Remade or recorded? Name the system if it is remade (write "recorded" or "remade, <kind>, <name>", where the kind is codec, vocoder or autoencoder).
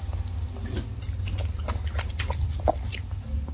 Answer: recorded